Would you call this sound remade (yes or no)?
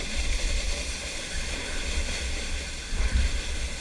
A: no